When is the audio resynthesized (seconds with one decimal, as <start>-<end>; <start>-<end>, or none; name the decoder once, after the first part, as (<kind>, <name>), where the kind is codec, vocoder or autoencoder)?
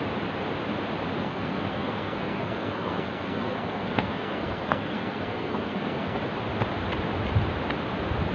1.2-6.2 (codec, SNAC)